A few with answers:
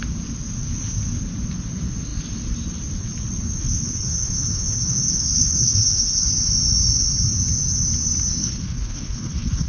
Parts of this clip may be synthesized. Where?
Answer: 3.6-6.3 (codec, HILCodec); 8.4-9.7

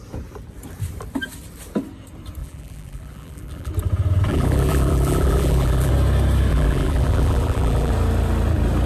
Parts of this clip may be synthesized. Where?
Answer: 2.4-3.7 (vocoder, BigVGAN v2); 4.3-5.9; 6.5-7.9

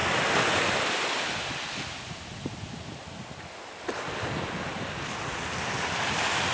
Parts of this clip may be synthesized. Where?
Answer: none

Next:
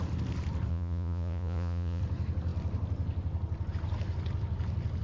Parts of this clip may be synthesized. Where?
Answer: 0.7-2.0 (vocoder, Vocos)

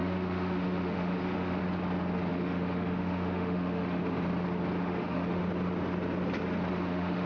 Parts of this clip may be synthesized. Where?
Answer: 0.0-1.6 (autoencoder, DAC-VAE); 2.3-4.0; 4.8-5.4; 6.7-7.3

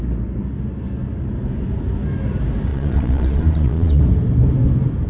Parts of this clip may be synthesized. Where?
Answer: 2.7-4.0 (vocoder, Vocos)

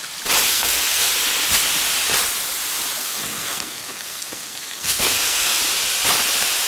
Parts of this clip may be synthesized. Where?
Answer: 0.5-1.1 (codec, SNAC); 3.0-5.6

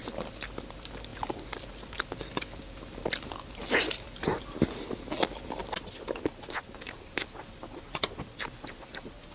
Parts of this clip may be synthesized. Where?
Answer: none